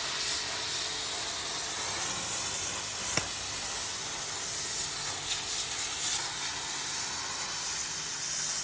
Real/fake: real